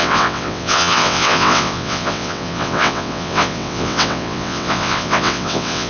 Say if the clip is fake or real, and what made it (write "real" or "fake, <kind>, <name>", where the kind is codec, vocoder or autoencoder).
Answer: fake, vocoder, WaveNeXt